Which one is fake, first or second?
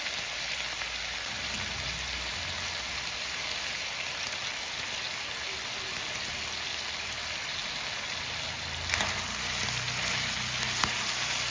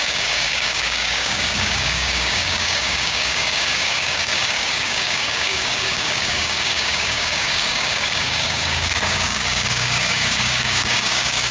second